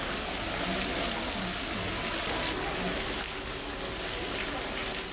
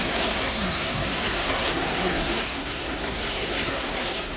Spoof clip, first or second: second